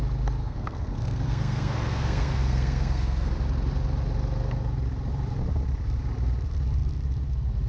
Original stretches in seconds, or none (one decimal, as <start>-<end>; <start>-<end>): 0.0-0.4; 3.3-7.7